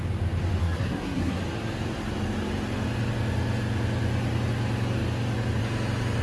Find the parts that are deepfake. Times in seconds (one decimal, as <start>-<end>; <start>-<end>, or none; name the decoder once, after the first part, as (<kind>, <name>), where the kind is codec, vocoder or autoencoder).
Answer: 0.6-1.4 (codec, SNAC)